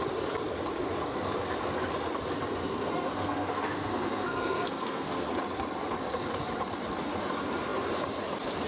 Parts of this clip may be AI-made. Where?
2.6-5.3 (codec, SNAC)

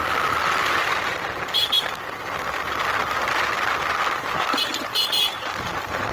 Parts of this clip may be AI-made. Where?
none